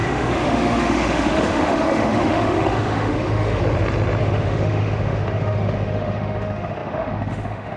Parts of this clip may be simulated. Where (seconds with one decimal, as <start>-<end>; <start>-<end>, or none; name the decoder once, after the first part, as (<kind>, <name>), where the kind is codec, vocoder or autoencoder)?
0.0-3.6 (autoencoder, DAC-VAE); 4.2-7.8

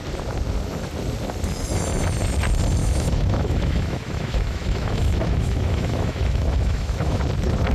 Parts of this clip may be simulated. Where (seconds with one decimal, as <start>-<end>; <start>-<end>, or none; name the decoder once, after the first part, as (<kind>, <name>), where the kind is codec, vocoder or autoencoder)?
2.8-7.2 (autoencoder, DAC-VAE)